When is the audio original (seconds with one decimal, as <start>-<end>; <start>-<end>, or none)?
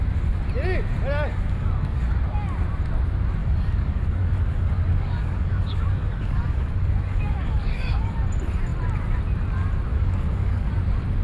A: 0.0-1.3; 2.2-3.4; 8.1-9.9; 10.7-11.2